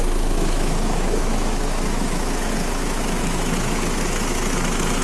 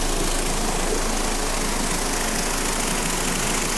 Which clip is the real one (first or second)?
second